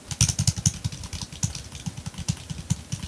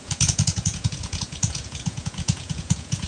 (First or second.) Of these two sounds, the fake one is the second